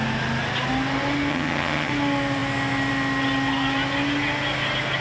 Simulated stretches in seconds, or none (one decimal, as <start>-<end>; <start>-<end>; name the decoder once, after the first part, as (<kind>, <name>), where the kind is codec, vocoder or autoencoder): 1.3-1.9 (vocoder, HiFi-GAN)